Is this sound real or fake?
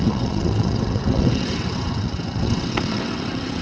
fake